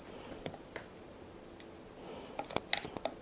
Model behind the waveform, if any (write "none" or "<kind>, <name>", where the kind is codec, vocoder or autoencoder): none